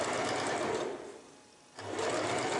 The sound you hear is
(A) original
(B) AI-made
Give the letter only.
A